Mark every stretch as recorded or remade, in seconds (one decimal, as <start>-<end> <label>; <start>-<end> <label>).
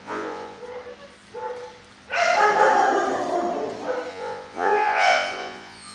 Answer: 0.0-0.6 remade; 0.6-4.1 recorded; 4.1-5.9 remade